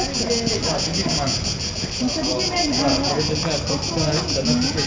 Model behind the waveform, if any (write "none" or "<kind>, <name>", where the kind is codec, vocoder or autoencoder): none